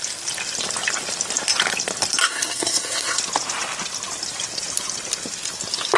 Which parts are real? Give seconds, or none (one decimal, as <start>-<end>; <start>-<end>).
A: 0.0-2.2; 3.2-6.0